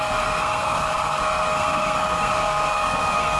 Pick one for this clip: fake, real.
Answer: fake